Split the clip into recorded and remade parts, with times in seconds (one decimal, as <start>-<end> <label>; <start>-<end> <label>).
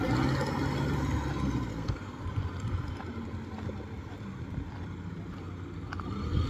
0.0-1.7 recorded; 1.7-2.2 remade; 2.2-6.5 recorded